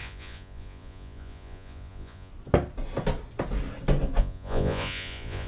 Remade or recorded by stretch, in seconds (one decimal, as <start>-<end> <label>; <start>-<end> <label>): 0.0-2.3 remade; 2.3-4.2 recorded; 4.2-5.5 remade